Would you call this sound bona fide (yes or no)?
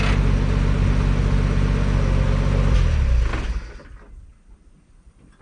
yes